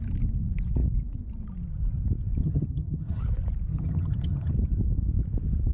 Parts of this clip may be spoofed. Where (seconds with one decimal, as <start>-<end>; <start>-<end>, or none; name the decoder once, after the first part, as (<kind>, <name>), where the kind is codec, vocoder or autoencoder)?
2.4-3.2 (vocoder, HiFi-GAN); 3.7-4.5